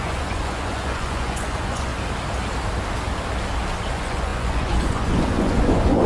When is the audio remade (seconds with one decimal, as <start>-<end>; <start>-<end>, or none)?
0.0-1.9; 3.9-6.1